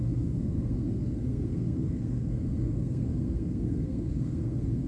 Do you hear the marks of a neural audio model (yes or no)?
yes